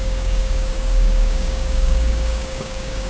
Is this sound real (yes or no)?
no